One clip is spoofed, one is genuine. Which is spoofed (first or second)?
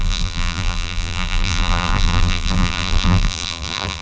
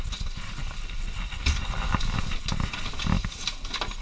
first